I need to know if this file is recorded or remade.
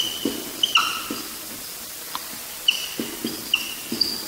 recorded